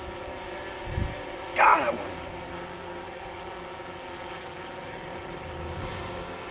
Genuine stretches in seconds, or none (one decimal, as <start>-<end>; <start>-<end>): 0.0-1.7; 2.5-6.5